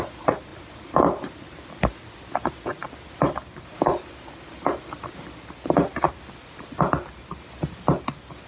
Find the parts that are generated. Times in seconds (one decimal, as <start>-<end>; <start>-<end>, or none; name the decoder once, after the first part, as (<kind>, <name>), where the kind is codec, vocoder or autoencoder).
0.5-1.4 (vocoder, BigVGAN v2)